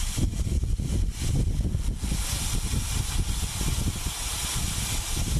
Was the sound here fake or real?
real